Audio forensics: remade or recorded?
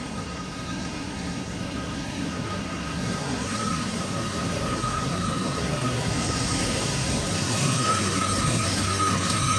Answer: remade